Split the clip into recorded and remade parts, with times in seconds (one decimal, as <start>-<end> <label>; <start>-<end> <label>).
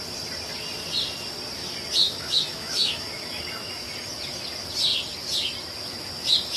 0.0-2.0 recorded; 2.0-3.9 remade; 3.9-6.6 recorded